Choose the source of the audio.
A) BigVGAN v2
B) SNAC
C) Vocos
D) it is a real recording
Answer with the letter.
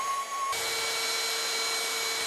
D